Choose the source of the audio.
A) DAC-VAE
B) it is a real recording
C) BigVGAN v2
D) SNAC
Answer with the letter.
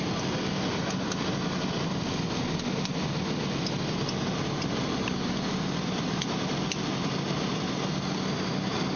B